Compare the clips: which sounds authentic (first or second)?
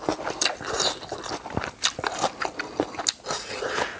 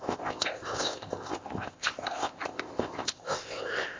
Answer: first